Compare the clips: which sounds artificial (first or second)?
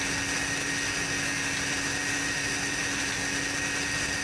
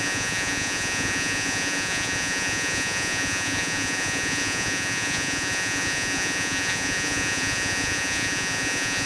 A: second